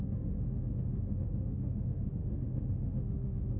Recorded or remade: remade